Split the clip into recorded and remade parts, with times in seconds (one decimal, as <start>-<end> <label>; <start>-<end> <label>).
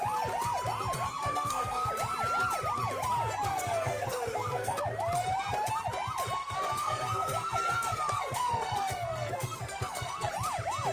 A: 0.0-1.2 recorded; 1.2-1.9 remade; 1.9-3.5 recorded; 3.5-4.8 remade; 4.8-6.4 recorded; 6.4-10.3 remade; 10.3-10.9 recorded